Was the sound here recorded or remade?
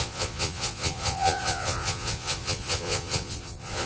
remade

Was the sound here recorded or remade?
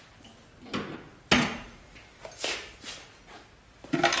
recorded